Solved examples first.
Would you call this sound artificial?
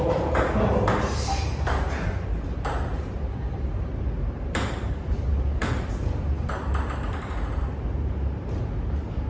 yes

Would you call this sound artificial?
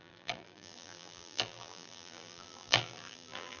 yes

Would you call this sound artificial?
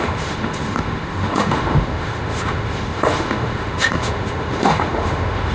yes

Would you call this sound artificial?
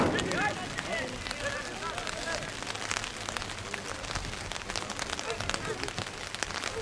no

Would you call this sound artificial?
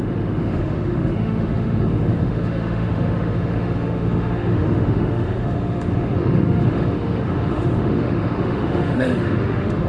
yes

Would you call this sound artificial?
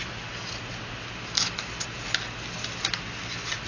no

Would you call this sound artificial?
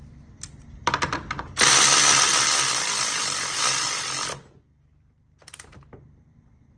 no